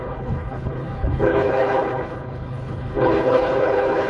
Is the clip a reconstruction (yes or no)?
yes